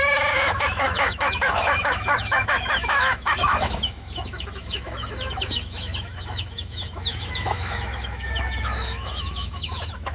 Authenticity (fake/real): fake